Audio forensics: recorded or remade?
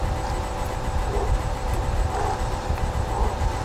recorded